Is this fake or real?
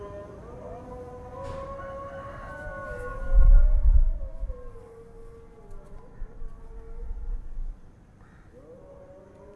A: real